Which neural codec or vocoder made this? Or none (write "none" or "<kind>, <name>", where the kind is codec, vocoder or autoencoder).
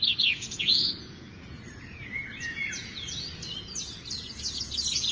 vocoder, Vocos